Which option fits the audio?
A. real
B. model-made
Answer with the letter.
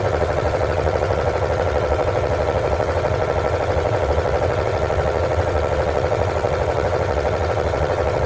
B